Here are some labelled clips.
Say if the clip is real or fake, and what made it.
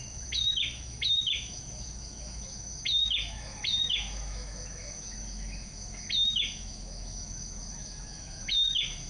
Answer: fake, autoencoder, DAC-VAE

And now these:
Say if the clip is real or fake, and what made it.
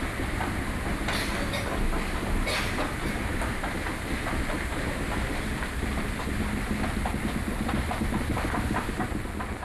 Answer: real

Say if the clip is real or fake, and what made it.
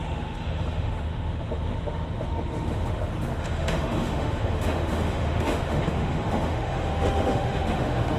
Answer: fake, autoencoder, DAC-VAE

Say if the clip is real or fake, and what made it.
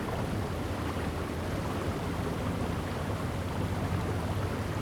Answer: real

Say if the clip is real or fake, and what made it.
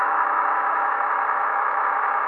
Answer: fake, autoencoder, DAC-VAE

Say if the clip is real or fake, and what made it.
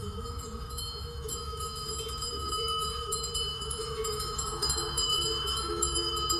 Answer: fake, autoencoder, DAC-VAE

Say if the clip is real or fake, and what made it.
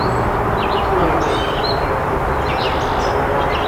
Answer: real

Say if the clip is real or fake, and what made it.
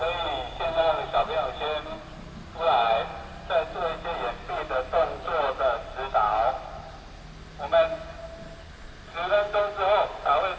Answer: real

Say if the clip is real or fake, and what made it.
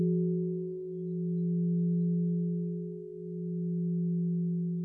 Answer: real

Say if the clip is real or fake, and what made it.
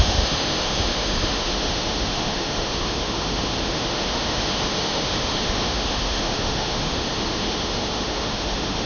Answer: fake, autoencoder, DAC-VAE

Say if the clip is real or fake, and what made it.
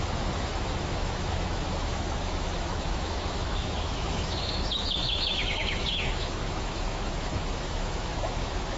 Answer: fake, autoencoder, DAC-VAE